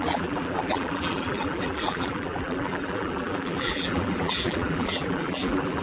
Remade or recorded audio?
remade